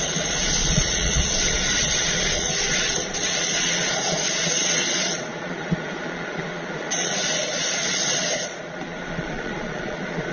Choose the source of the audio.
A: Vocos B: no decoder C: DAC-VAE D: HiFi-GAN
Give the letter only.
A